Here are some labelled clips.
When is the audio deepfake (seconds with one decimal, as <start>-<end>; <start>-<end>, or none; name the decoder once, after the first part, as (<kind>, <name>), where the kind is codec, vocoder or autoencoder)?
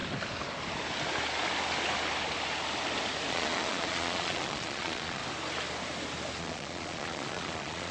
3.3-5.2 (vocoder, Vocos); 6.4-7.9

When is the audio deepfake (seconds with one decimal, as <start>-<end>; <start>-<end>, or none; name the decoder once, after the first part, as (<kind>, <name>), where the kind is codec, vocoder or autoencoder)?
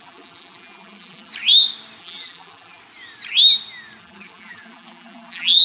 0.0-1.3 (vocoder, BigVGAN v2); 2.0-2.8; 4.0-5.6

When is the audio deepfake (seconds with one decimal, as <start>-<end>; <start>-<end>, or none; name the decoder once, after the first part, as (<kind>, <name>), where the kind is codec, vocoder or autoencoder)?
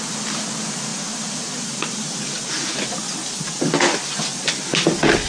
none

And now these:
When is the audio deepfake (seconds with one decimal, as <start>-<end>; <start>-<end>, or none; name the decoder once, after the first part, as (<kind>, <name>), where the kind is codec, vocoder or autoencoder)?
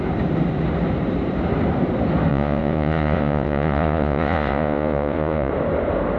2.3-5.5 (vocoder, Vocos)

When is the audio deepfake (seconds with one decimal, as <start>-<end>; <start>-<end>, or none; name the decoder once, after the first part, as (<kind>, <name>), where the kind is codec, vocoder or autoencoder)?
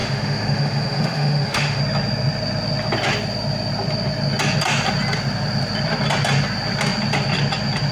0.0-1.8 (autoencoder, DAC-VAE)